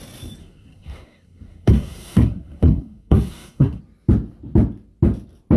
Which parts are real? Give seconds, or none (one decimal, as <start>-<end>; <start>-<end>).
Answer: 0.0-0.4; 3.8-5.6